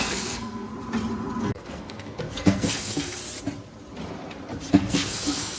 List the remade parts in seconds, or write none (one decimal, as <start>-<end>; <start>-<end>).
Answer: 0.0-0.7; 1.4-3.2; 4.7-5.6

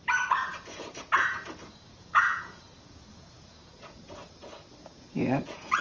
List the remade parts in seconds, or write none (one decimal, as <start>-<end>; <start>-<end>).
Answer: 0.5-4.0; 4.9-5.8

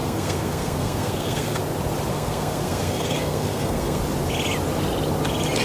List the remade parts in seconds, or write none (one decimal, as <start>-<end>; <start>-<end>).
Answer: 0.0-1.6; 2.1-4.0